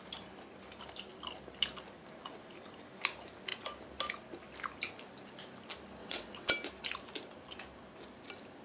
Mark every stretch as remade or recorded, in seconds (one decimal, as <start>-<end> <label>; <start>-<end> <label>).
0.0-6.0 recorded; 6.0-6.5 remade; 6.5-8.6 recorded